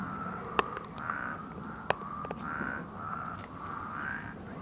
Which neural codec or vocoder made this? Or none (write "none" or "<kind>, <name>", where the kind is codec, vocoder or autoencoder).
none